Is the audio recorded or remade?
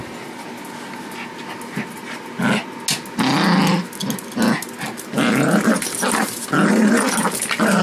recorded